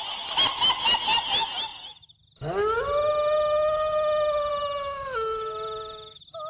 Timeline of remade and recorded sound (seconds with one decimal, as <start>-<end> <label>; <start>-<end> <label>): 0.0-6.5 recorded